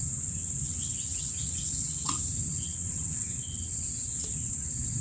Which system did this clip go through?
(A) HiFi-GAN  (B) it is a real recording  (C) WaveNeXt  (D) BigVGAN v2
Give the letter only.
C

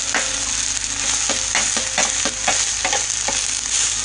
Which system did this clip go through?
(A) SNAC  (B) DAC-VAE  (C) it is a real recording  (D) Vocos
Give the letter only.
C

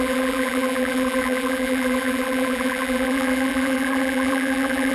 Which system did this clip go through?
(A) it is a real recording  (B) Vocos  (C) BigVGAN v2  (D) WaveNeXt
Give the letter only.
C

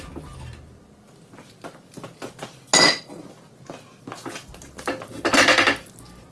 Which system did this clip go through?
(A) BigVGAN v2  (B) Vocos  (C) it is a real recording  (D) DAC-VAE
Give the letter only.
C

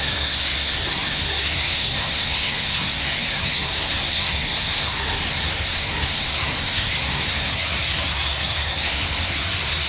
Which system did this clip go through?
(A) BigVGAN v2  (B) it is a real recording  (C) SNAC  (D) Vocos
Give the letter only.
C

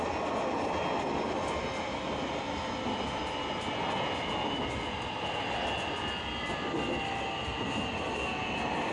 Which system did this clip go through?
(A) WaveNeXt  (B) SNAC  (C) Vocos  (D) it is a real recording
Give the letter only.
D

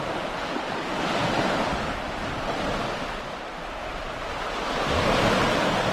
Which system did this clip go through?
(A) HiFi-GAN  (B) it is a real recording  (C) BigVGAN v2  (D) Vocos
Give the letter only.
B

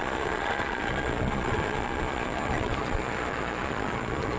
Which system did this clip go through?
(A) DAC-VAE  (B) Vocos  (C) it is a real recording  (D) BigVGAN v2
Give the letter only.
B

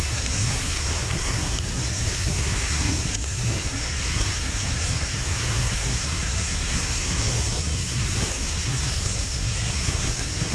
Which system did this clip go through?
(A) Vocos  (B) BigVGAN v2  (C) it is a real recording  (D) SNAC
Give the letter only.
D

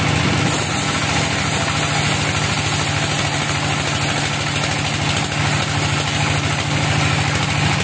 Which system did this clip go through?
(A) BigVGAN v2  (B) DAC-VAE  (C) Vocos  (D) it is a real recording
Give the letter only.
D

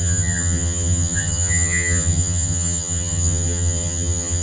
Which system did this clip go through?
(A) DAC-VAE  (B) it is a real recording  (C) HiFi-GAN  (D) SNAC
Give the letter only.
C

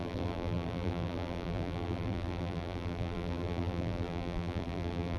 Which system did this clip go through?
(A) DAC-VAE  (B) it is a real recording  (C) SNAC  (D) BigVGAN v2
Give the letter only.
D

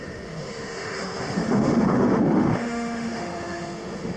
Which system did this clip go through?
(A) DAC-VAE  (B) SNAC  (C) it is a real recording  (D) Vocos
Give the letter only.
A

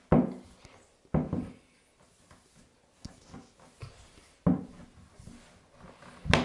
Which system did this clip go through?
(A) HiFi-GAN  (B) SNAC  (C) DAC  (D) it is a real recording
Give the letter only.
D